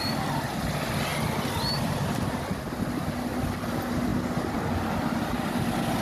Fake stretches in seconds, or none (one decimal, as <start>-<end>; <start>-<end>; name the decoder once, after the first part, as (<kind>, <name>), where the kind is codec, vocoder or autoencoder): none